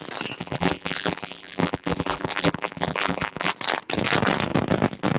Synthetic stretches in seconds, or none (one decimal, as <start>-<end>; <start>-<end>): 0.4-3.5

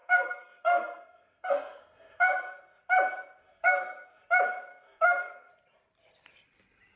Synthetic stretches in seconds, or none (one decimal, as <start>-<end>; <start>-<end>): 0.0-2.8; 3.4-4.2; 4.7-5.5

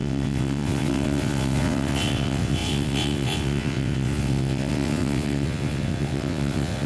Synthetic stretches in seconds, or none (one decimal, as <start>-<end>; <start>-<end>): 0.0-6.9

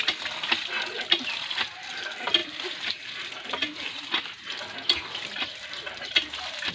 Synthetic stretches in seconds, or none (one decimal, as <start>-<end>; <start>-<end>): none